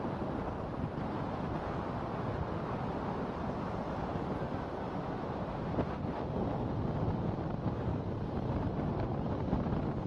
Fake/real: real